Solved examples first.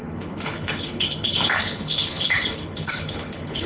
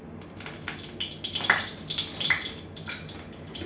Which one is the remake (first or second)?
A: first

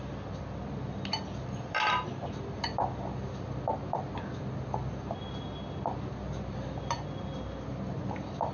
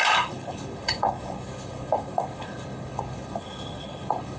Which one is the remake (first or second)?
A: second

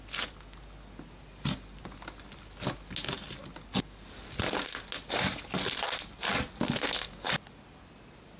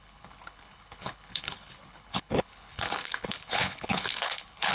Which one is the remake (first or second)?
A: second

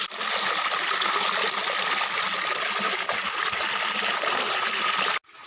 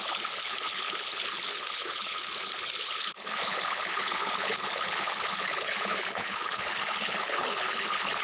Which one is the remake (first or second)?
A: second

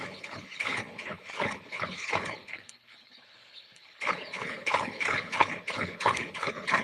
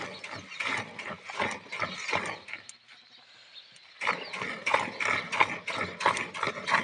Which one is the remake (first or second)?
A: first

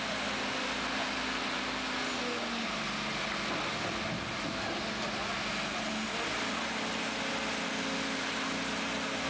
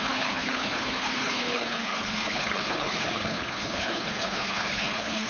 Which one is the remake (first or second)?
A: second